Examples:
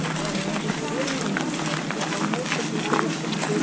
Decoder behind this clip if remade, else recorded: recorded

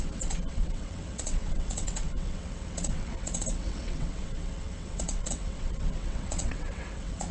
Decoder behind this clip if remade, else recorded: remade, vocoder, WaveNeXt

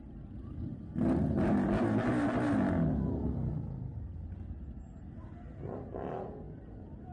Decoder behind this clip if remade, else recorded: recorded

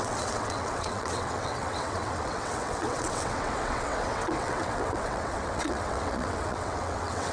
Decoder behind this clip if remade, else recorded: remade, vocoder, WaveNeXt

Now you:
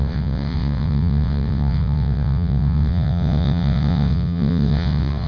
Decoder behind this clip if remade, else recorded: remade, vocoder, WaveNeXt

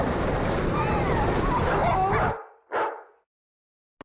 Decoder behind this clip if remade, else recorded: recorded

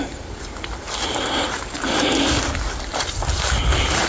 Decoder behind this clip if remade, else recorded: recorded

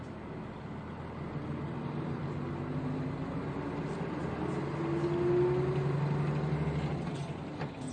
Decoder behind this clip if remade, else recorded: recorded